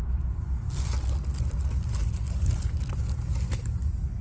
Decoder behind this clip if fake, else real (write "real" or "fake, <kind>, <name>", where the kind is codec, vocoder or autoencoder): real